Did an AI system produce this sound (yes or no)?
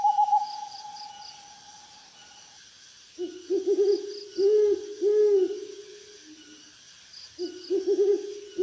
no